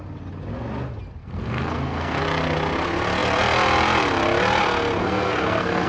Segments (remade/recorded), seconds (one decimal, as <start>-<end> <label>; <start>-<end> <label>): 0.0-1.2 recorded; 1.2-2.2 remade; 2.2-5.0 recorded; 5.0-5.9 remade